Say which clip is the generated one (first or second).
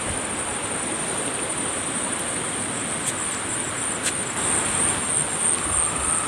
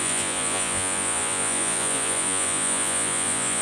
second